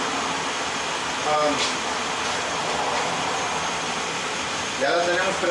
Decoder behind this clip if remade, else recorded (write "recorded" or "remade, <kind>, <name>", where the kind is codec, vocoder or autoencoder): recorded